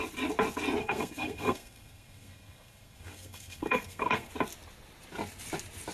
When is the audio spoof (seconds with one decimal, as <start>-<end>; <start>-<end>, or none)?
0.8-4.3